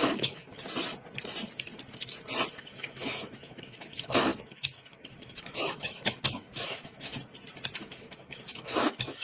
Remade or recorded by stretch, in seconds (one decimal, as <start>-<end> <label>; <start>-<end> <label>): 0.0-0.4 remade; 0.4-2.5 recorded; 2.5-7.1 remade; 7.1-7.8 recorded; 7.8-9.2 remade